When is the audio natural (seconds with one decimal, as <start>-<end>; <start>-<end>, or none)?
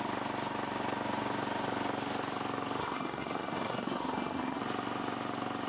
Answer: 0.0-2.8; 4.6-5.7